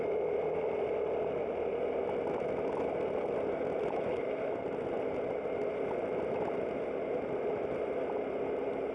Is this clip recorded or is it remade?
recorded